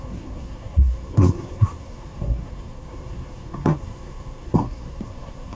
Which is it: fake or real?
fake